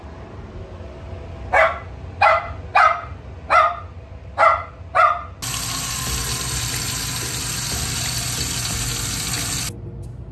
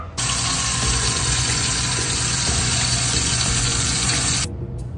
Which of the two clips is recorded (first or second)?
first